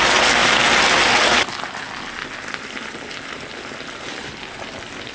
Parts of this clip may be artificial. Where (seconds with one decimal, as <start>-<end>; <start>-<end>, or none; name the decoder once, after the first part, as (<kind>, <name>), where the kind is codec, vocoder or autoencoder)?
none